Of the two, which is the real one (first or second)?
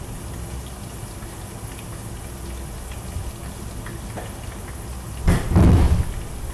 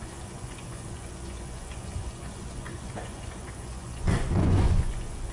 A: first